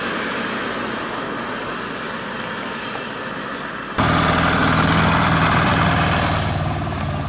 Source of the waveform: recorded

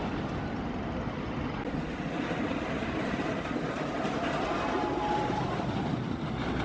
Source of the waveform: recorded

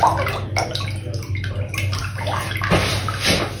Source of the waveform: recorded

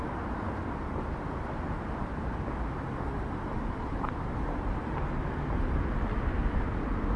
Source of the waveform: recorded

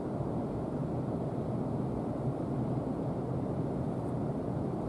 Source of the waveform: remade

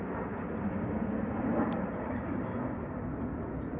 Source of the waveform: recorded